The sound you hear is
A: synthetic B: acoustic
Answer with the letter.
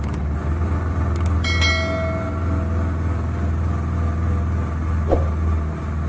B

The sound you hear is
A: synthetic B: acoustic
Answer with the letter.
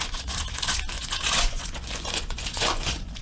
A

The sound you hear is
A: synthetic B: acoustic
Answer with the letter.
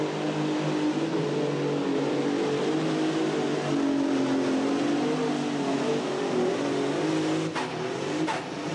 B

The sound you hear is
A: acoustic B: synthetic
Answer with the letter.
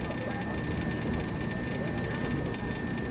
A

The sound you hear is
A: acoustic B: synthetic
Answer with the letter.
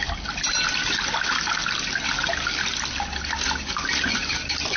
A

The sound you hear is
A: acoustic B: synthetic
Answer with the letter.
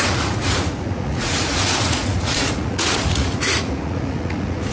B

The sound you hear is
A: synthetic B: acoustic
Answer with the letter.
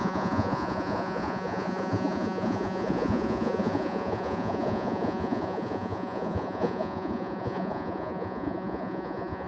A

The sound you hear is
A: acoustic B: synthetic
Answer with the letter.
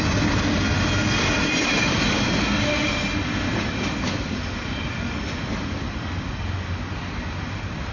A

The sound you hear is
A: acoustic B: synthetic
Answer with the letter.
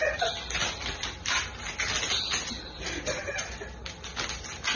A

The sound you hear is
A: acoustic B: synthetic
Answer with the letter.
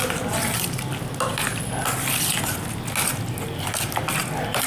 A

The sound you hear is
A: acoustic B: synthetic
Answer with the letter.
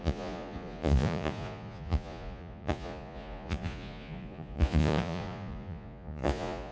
B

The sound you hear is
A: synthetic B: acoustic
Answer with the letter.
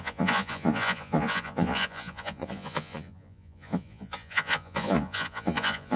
A